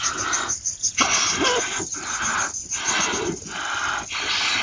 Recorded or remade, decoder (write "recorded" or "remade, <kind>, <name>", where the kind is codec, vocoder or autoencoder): recorded